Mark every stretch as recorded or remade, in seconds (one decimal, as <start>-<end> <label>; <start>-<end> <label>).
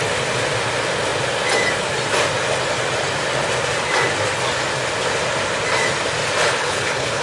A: 0.0-6.4 recorded; 6.4-7.2 remade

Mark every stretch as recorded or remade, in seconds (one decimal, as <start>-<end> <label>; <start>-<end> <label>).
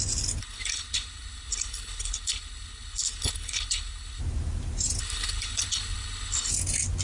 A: 0.0-0.4 recorded; 0.4-4.2 remade; 4.2-5.0 recorded; 5.0-6.5 remade; 6.5-7.0 recorded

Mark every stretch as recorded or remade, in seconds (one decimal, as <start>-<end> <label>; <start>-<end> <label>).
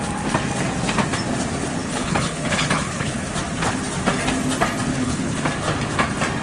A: 0.0-1.8 recorded; 1.8-3.3 remade; 3.3-4.9 recorded; 4.9-5.4 remade; 5.4-6.4 recorded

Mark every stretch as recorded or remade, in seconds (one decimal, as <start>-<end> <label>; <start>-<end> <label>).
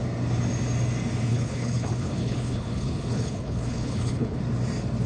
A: 0.0-1.3 recorded; 1.3-4.4 remade; 4.4-5.1 recorded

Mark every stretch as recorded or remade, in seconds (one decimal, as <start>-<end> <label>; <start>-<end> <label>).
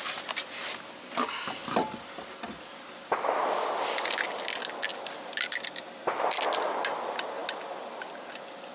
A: 0.0-8.7 recorded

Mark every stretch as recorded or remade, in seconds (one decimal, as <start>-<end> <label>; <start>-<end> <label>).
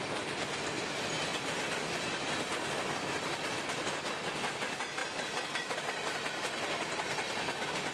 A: 0.0-7.9 recorded